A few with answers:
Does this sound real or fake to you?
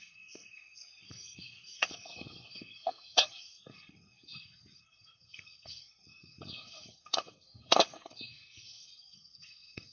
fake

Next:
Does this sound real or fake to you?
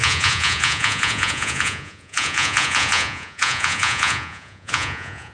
fake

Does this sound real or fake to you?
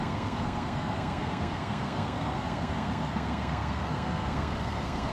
fake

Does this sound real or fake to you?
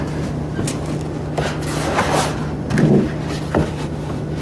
real